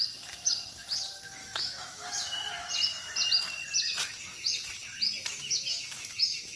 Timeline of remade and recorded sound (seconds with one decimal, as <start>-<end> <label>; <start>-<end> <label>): 0.0-1.4 recorded; 1.4-2.7 remade; 2.7-5.3 recorded; 5.3-6.6 remade